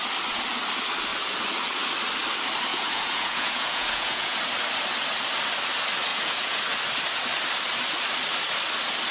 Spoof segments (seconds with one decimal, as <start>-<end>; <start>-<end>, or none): 2.7-4.4; 6.1-6.6